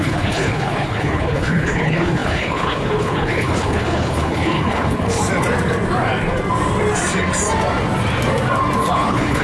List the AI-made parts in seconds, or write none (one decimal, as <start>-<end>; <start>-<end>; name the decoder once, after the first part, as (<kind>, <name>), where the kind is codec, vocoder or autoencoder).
0.0-5.2 (codec, HILCodec); 8.9-9.4